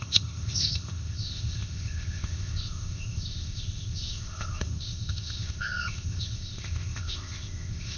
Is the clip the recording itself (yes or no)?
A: no